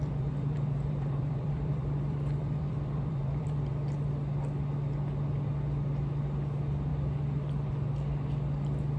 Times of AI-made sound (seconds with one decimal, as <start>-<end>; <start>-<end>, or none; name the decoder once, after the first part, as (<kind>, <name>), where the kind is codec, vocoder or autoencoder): 0.0-3.7 (vocoder, BigVGAN v2)

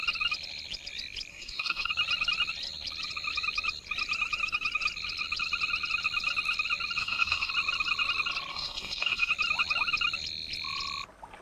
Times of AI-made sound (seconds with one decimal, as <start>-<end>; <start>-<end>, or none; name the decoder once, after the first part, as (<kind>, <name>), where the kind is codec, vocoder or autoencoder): 1.3-1.9 (codec, DAC); 7.0-7.5; 8.5-9.3

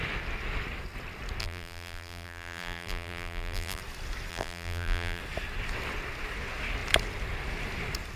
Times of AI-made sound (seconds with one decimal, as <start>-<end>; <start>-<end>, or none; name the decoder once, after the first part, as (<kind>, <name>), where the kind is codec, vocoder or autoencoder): 1.4-3.8 (vocoder, BigVGAN v2); 4.3-5.2